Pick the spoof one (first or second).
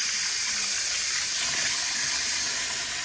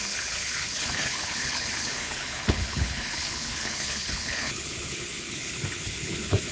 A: second